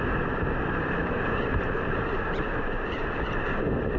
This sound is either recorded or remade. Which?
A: recorded